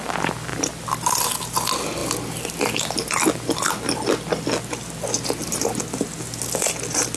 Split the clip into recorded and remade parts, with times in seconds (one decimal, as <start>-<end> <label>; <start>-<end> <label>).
0.0-7.2 recorded